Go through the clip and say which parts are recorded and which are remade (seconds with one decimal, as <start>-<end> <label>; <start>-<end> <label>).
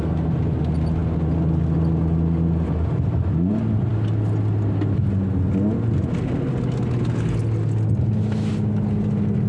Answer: 0.0-9.5 recorded